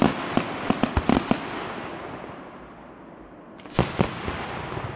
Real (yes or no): yes